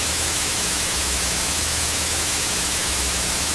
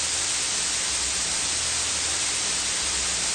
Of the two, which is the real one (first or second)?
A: second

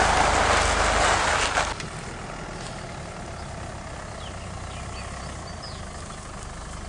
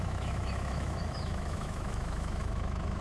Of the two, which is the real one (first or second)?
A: first